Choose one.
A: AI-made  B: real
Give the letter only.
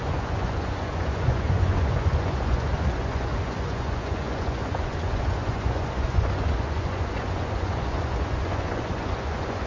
A